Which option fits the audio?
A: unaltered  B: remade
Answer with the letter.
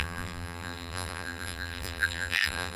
B